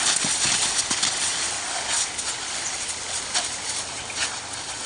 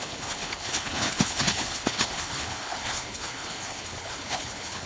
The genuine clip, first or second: first